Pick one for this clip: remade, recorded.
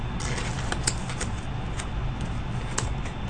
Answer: recorded